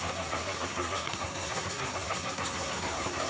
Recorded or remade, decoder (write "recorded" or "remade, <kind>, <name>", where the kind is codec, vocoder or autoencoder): remade, codec, SNAC